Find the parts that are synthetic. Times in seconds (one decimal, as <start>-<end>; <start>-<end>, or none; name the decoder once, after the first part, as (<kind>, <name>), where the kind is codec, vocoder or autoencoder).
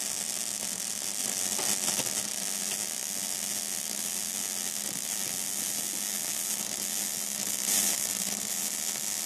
1.2-2.2 (vocoder, BigVGAN v2); 7.4-8.4